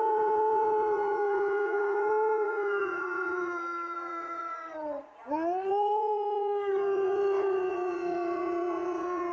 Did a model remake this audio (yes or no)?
yes